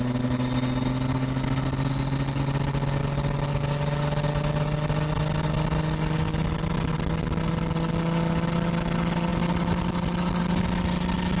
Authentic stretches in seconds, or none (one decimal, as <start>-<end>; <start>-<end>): 0.0-11.4